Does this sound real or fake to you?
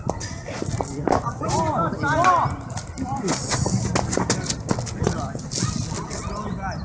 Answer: real